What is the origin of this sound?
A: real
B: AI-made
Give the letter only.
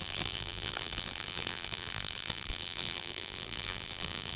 B